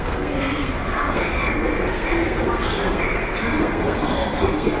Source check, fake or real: fake